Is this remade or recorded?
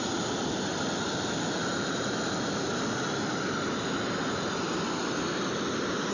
recorded